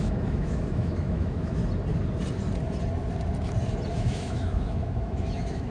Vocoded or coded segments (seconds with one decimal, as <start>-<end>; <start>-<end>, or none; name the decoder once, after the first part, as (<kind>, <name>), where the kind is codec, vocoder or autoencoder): 0.0-1.6 (autoencoder, DAC-VAE); 3.9-5.7